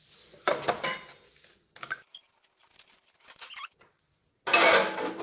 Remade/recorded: recorded